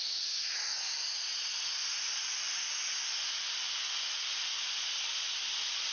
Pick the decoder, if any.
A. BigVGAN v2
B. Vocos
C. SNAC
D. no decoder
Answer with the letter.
D